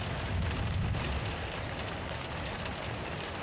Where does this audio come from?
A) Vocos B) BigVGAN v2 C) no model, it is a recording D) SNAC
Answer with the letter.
C